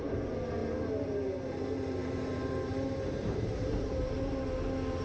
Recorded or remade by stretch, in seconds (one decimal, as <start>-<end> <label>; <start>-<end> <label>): 0.0-2.0 recorded; 2.0-4.5 remade; 4.5-5.0 recorded